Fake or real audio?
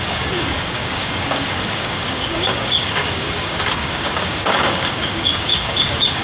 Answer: fake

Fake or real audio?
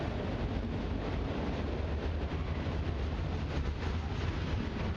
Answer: real